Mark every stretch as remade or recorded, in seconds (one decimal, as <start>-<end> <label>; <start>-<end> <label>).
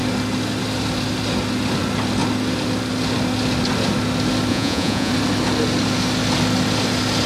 0.0-4.5 recorded; 4.5-5.1 remade; 5.1-7.3 recorded